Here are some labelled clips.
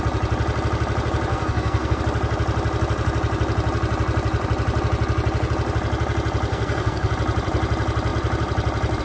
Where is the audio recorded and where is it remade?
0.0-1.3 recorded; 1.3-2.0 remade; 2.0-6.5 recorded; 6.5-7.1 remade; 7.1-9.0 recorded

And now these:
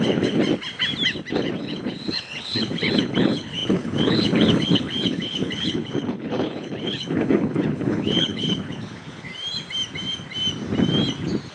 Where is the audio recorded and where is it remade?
0.0-0.4 remade; 0.4-1.3 recorded; 1.3-9.3 remade; 9.3-11.5 recorded

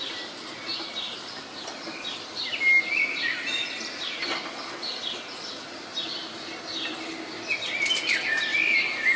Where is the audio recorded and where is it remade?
0.0-9.2 recorded

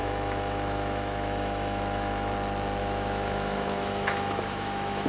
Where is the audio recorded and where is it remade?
0.0-2.3 remade; 2.3-2.8 recorded; 2.8-5.1 remade

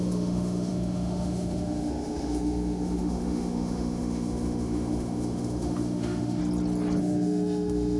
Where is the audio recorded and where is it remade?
0.0-6.4 remade; 6.4-7.0 recorded; 7.0-8.0 remade

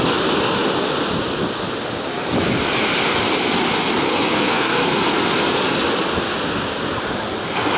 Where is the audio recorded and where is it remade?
0.0-4.1 recorded; 4.1-5.6 remade; 5.6-7.8 recorded

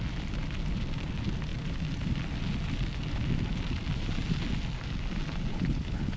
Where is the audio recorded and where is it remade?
0.0-5.5 recorded; 5.5-6.2 remade

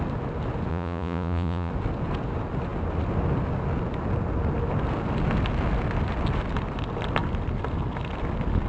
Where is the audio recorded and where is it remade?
0.0-0.7 recorded; 0.7-1.7 remade; 1.7-8.7 recorded